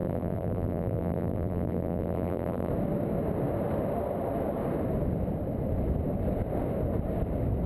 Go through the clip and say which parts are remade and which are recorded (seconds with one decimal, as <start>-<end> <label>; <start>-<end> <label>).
0.0-2.7 remade; 2.7-7.7 recorded